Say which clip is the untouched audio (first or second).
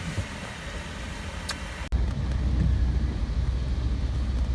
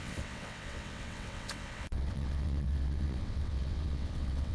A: first